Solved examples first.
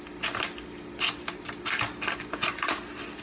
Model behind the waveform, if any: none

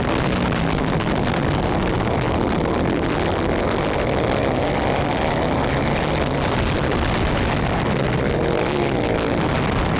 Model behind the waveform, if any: none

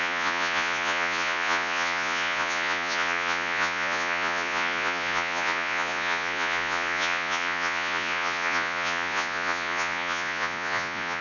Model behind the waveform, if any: vocoder, Vocos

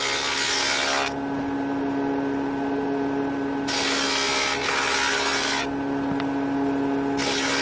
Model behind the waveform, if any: none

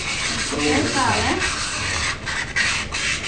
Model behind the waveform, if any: none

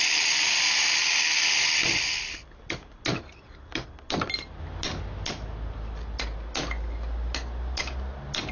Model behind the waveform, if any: none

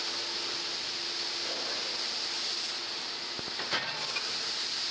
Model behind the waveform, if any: none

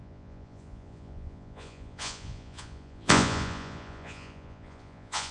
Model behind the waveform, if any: vocoder, Vocos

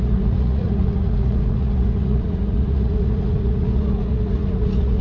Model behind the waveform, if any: vocoder, Vocos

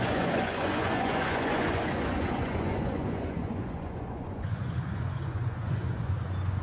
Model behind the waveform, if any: vocoder, Vocos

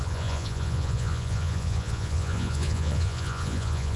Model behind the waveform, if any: vocoder, Vocos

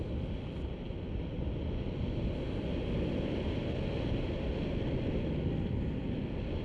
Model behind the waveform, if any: none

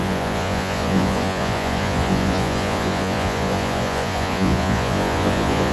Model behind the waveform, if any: vocoder, Vocos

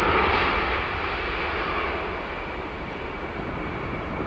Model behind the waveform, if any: none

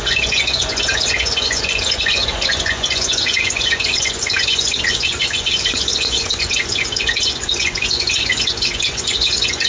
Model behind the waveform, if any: vocoder, Vocos